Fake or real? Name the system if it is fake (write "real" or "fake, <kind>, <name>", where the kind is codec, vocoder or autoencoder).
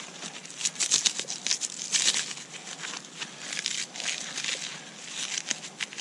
real